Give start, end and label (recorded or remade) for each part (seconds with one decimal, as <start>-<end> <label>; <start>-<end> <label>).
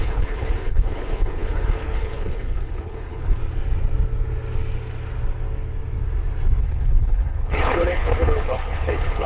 0.0-3.4 remade; 3.4-6.6 recorded; 6.6-9.3 remade